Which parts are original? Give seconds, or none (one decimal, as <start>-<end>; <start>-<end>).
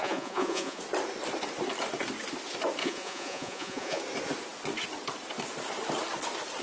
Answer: 0.8-2.8; 4.0-6.6